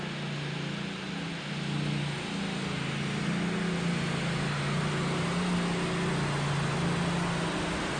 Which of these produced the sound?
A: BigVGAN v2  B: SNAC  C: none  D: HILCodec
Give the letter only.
C